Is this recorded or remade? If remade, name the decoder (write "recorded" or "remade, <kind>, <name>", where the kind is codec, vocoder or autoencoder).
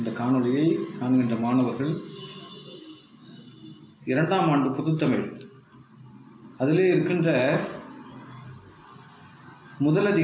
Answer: recorded